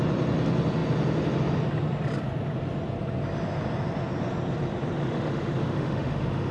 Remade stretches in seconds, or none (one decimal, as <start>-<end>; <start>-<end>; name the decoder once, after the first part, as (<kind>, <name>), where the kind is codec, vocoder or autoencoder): 5.0-6.5 (autoencoder, DAC-VAE)